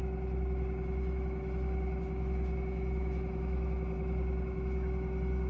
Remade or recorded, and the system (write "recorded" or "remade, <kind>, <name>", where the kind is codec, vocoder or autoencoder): remade, autoencoder, DAC-VAE